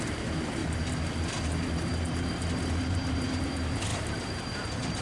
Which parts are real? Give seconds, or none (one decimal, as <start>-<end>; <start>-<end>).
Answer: 0.6-2.9